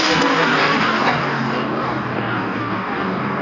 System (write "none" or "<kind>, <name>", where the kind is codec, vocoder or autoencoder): codec, DAC